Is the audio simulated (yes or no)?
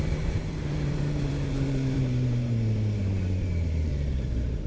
yes